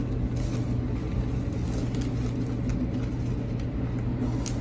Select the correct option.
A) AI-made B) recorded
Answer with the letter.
B